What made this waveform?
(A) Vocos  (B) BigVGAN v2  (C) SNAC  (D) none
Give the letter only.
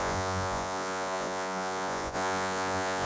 A